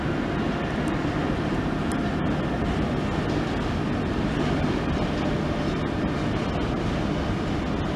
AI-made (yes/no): no